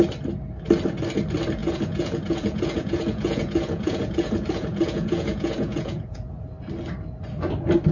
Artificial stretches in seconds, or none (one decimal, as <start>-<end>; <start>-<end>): 1.6-6.3